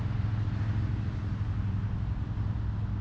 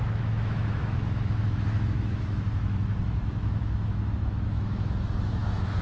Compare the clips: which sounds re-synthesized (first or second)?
second